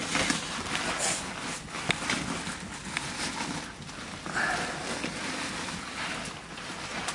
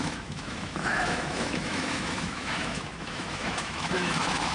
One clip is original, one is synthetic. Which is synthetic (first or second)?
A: second